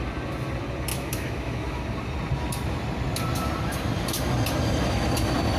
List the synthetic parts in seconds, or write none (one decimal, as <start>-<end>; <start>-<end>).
0.9-1.8